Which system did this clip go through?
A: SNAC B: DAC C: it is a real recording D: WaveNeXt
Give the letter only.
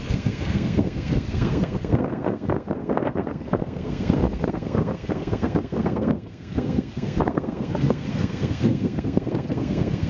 A